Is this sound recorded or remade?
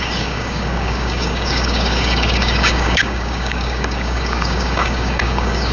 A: remade